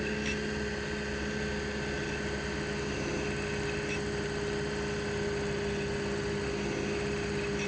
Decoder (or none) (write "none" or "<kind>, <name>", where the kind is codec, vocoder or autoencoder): none